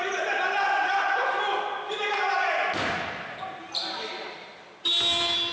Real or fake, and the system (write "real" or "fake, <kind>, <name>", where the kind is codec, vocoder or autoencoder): real